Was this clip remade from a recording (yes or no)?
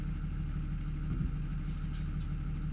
no